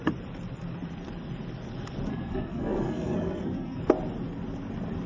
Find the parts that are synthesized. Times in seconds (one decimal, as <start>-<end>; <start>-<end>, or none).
2.1-3.8